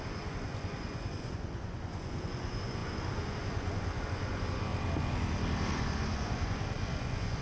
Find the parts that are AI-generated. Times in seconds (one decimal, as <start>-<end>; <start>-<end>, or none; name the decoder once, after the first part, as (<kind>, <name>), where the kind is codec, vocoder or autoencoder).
0.0-4.7 (vocoder, Vocos); 5.7-7.4